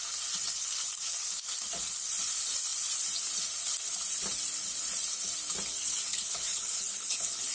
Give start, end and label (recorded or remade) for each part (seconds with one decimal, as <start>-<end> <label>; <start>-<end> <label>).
0.0-6.1 recorded; 6.1-7.5 remade